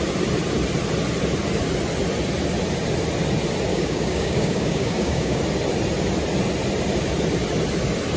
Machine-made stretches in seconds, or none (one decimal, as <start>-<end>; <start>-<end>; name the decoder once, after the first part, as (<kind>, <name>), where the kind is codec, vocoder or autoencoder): 3.7-5.4 (codec, DAC)